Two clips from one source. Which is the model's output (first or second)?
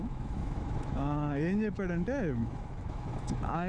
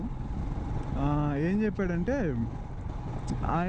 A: first